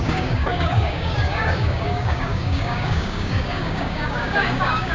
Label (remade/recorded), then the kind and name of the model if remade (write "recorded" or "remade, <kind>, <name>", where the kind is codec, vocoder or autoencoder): remade, codec, DAC